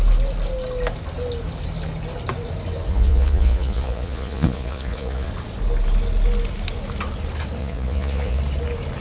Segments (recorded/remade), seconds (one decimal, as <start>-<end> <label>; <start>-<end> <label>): 0.0-2.9 recorded; 2.9-5.3 remade; 5.3-7.6 recorded; 7.6-8.4 remade; 8.4-9.0 recorded